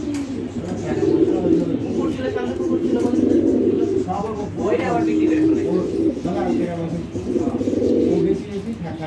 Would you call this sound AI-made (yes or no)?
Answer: no